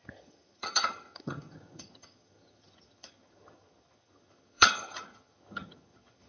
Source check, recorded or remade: remade